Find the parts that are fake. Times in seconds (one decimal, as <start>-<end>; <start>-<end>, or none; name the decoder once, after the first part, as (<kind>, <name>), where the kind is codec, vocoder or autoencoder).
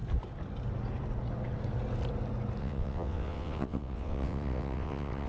2.6-5.3 (vocoder, WaveNeXt)